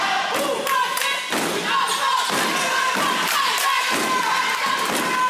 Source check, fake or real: real